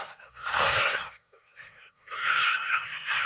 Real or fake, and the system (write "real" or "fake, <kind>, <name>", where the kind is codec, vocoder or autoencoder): fake, codec, SNAC